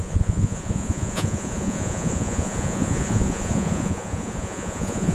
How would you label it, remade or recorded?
remade